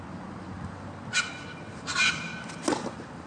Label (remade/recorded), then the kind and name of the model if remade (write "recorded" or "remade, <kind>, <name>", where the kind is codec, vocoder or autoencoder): recorded